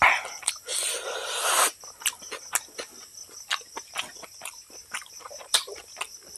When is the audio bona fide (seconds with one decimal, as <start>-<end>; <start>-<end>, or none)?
0.0-6.4